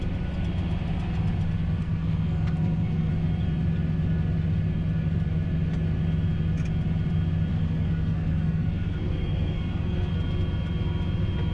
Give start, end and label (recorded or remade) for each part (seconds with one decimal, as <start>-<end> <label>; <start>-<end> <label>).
0.0-1.8 recorded; 1.8-3.1 remade; 3.1-7.5 recorded; 7.5-10.1 remade; 10.1-11.5 recorded